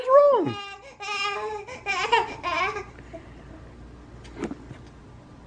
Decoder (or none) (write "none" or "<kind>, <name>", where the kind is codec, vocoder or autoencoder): none